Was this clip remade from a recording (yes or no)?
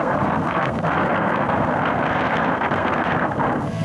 yes